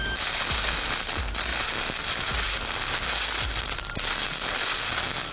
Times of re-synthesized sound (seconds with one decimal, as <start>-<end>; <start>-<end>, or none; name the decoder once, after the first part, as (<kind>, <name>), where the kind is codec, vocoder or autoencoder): none